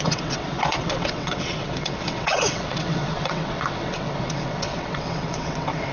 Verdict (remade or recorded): remade